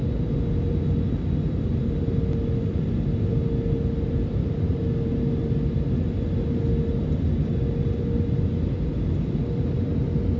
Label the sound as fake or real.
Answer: real